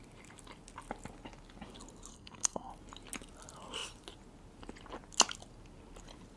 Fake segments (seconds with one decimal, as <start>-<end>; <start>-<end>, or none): 2.1-2.7